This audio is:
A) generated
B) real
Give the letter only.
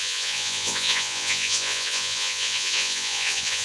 A